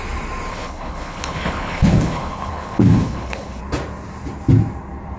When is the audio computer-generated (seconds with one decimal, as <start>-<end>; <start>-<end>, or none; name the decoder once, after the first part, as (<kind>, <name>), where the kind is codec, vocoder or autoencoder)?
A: 0.5-3.6 (codec, HILCodec)